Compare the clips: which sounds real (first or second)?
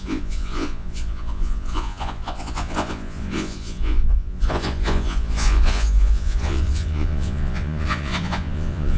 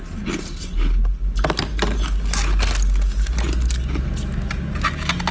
second